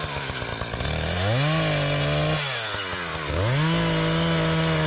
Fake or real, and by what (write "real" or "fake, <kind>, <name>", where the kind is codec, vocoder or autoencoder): real